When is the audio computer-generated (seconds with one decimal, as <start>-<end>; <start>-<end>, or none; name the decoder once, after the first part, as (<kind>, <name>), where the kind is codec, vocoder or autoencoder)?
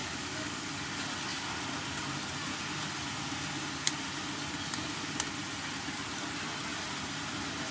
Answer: 0.0-0.7 (codec, DAC)